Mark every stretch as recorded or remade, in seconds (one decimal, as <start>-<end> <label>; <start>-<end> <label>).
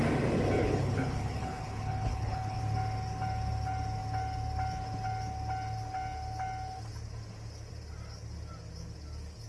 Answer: 0.0-0.6 recorded; 0.6-2.6 remade; 2.6-9.5 recorded